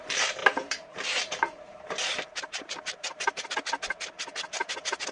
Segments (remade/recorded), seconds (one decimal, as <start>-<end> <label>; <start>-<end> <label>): 0.0-0.4 recorded; 0.4-3.5 remade; 3.5-5.1 recorded